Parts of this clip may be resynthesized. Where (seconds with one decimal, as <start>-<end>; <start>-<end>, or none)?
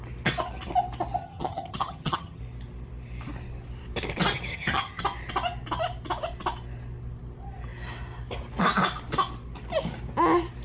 1.2-2.4; 4.5-5.0